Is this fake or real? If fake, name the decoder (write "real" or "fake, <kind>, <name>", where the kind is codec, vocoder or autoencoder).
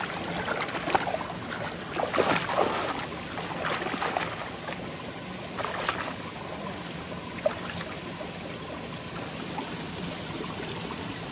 real